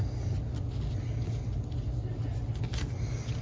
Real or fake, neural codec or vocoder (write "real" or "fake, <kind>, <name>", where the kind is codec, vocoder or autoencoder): real